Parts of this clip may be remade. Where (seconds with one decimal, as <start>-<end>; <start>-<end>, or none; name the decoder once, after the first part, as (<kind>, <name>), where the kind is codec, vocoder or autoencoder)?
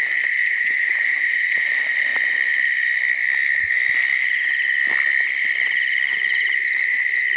0.4-1.7 (vocoder, Vocos)